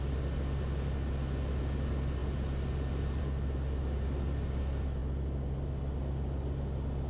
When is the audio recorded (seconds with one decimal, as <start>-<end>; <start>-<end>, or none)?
0.0-7.1